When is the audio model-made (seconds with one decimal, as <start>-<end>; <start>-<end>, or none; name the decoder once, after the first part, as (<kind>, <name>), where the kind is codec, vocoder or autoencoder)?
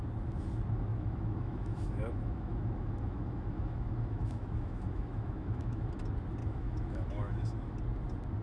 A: 0.9-5.9 (autoencoder, DAC-VAE); 6.4-7.8